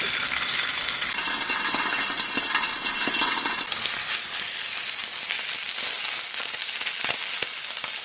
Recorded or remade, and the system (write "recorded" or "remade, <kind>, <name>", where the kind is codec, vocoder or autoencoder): recorded